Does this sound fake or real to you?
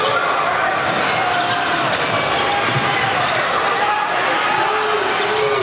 real